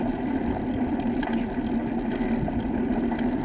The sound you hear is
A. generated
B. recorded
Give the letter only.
B